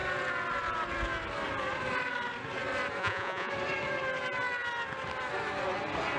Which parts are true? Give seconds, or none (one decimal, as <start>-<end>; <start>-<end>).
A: 0.0-3.0; 3.5-6.2